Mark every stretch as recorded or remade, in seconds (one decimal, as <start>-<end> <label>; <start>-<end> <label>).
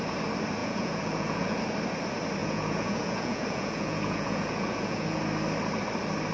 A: 0.0-0.6 recorded; 0.6-1.6 remade; 1.6-2.4 recorded; 2.4-5.2 remade; 5.2-6.3 recorded